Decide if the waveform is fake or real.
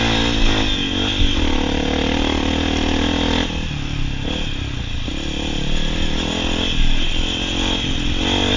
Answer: real